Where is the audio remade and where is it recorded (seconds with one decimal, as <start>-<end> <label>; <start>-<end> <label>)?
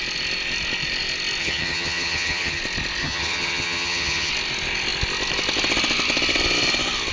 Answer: 0.0-1.4 recorded; 1.4-2.6 remade; 2.6-3.0 recorded; 3.0-4.3 remade; 4.3-7.1 recorded